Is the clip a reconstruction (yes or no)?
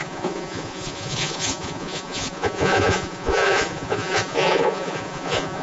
yes